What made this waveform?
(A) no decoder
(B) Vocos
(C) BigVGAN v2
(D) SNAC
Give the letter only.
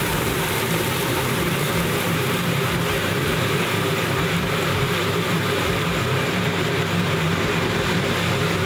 C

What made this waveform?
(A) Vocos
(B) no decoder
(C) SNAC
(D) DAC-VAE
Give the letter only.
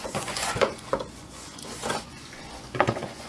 A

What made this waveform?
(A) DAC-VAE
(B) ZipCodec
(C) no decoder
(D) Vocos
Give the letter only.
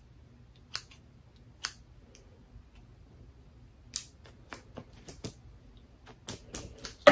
C